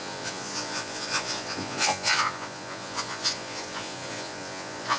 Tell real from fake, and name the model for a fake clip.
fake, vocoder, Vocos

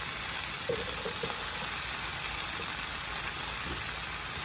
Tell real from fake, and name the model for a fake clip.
real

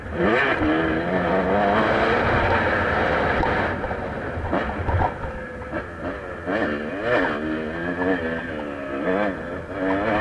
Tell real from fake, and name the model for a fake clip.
real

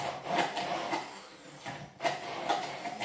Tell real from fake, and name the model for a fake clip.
real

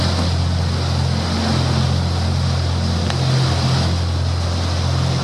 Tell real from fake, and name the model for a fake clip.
real